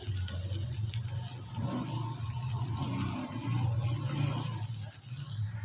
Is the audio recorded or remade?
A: recorded